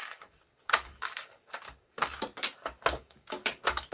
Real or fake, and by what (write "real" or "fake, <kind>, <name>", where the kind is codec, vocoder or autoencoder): fake, codec, DAC